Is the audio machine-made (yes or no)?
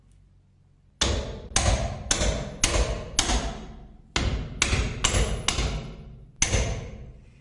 no